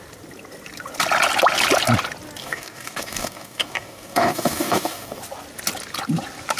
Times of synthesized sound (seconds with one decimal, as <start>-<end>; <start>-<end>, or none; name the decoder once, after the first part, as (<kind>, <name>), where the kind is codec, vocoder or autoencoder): 2.4-5.2 (codec, DAC)